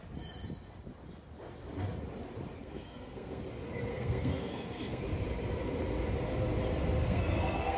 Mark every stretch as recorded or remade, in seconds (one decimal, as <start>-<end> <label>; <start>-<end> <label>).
0.0-2.6 recorded; 2.6-3.4 remade; 3.4-3.9 recorded; 3.9-5.0 remade; 5.0-7.0 recorded; 7.0-7.8 remade